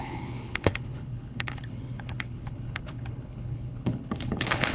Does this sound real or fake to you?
fake